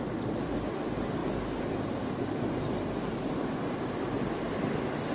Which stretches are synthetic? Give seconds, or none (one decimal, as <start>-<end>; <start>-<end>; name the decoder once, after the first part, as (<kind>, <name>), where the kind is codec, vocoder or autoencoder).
none